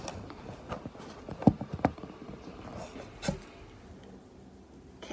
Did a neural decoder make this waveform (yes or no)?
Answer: no